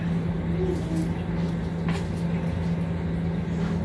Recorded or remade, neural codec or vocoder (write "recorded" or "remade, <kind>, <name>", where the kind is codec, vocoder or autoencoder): recorded